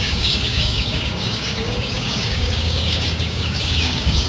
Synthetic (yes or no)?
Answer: yes